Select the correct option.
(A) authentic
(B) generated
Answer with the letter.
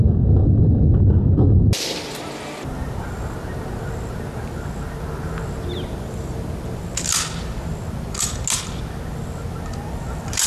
A